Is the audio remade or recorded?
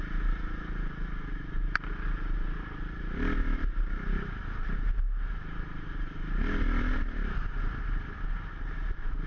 recorded